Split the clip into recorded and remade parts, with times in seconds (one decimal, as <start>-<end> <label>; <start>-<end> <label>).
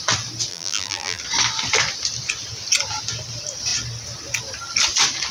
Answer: 0.0-0.5 recorded; 0.5-1.2 remade; 1.2-5.3 recorded